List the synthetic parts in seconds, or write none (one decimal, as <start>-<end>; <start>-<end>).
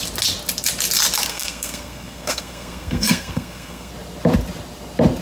1.3-3.9